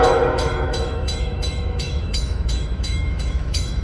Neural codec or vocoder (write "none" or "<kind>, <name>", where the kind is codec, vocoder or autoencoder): autoencoder, DAC-VAE